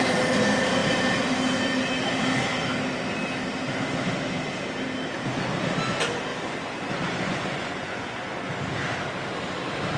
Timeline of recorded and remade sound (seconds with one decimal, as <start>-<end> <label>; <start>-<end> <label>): 0.0-6.3 recorded; 6.3-8.5 remade; 8.5-10.0 recorded